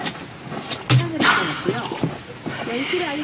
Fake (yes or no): no